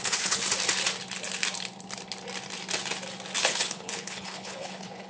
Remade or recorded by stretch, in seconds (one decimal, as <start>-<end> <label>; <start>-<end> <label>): 0.0-0.4 remade; 0.4-3.4 recorded; 3.4-5.1 remade